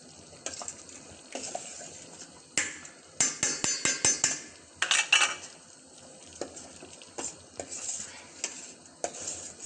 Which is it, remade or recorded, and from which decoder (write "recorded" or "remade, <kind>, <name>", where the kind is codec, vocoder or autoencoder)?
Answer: recorded